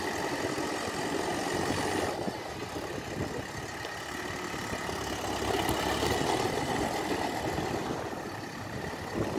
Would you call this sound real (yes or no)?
yes